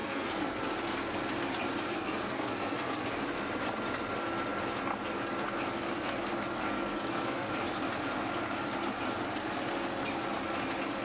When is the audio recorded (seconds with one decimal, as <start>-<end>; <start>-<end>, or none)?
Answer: 0.6-1.9; 3.0-6.6; 7.5-11.0